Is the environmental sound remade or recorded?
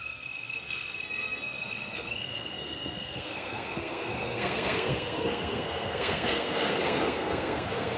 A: remade